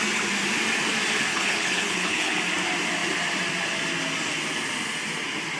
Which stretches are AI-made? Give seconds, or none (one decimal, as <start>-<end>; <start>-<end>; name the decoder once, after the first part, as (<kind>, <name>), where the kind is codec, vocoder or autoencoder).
1.3-2.4 (codec, HILCodec)